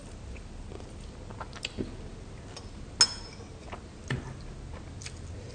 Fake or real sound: real